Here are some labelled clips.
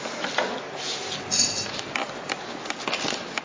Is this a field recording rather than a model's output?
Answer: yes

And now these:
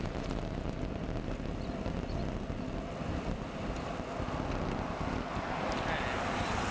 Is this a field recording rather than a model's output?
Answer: yes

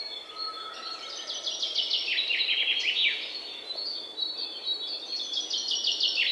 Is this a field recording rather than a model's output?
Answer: yes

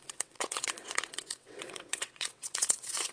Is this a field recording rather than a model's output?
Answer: no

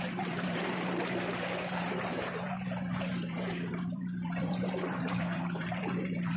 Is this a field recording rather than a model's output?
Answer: no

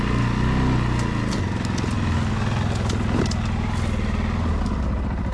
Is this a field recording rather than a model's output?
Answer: yes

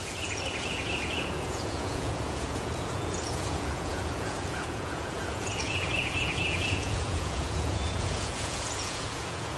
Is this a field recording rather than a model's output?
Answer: no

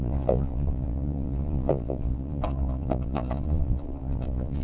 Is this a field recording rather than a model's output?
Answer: no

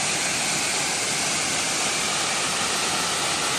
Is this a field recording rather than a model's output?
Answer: yes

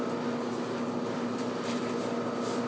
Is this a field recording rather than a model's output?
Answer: yes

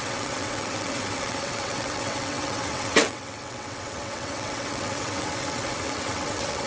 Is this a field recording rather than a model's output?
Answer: no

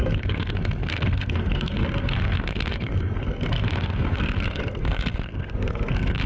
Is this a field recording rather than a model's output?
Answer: no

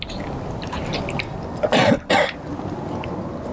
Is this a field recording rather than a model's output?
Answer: yes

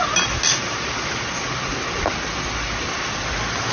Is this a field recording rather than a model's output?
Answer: yes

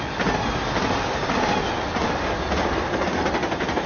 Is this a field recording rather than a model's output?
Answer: yes